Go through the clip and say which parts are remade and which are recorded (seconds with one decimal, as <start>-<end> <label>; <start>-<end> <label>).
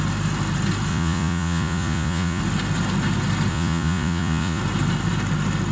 0.0-0.9 recorded; 0.9-2.4 remade; 2.4-3.5 recorded; 3.5-4.6 remade; 4.6-5.7 recorded